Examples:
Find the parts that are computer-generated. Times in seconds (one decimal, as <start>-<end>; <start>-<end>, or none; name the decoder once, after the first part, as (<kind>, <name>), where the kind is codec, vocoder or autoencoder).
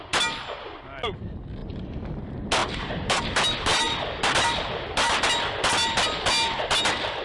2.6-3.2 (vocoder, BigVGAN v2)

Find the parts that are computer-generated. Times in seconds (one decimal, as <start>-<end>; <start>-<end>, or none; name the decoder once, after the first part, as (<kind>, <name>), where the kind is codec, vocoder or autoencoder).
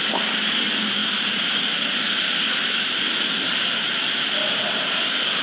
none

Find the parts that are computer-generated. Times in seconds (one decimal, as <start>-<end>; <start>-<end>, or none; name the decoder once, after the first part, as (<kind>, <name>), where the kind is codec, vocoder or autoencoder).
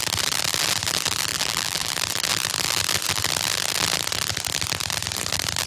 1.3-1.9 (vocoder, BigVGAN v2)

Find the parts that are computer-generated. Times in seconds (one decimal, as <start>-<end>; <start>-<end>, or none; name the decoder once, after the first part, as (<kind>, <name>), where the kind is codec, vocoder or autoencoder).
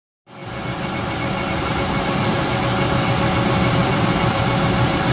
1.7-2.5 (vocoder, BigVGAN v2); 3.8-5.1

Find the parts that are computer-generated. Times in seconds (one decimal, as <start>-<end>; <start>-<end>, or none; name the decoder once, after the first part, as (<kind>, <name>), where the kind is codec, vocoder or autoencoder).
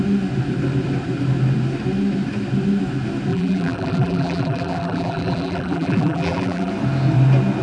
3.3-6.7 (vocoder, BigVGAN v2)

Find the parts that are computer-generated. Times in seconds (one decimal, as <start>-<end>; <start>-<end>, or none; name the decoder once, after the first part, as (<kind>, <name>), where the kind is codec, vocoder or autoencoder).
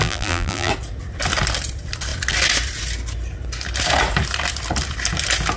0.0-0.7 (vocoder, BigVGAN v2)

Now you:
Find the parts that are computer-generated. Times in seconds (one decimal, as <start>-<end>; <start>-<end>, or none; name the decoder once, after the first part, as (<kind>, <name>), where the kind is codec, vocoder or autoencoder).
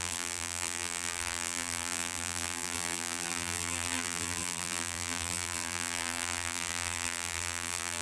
0.0-8.0 (vocoder, BigVGAN v2)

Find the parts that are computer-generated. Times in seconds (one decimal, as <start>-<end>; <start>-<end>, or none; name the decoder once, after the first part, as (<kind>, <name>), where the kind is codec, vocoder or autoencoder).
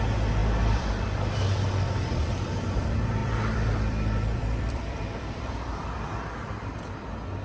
0.4-2.5 (vocoder, BigVGAN v2); 3.2-6.8